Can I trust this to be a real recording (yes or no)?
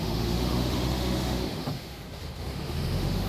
no